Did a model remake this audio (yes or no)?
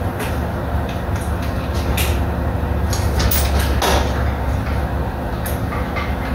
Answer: no